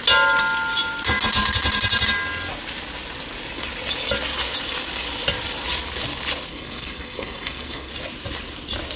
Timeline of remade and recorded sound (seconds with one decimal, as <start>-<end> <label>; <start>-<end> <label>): 0.0-6.5 recorded; 6.5-7.9 remade; 7.9-9.0 recorded

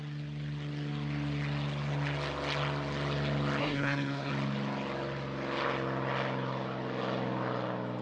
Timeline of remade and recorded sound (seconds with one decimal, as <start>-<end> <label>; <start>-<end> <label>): 0.0-3.6 recorded; 3.6-4.3 remade; 4.3-8.0 recorded

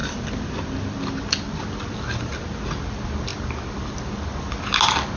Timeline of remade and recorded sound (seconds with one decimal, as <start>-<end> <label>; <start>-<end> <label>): 0.0-5.2 recorded